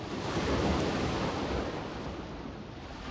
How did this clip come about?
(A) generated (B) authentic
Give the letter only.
B